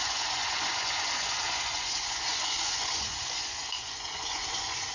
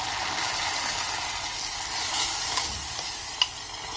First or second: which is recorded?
second